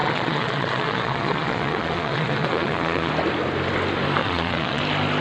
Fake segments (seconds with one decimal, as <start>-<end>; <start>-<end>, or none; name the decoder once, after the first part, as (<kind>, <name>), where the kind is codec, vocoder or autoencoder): 0.0-3.1 (vocoder, Vocos); 4.2-4.8